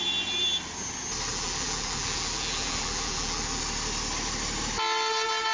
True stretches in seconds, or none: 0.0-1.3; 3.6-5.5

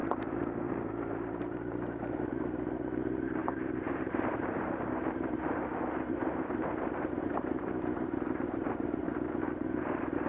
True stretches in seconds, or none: 0.0-1.0; 9.0-9.8

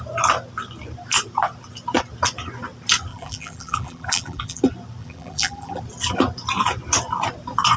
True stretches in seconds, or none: 0.0-3.1; 4.6-5.0; 5.8-7.8

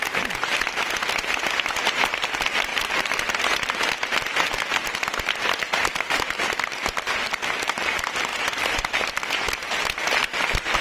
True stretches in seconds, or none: 0.0-2.7; 3.9-8.3; 9.1-10.8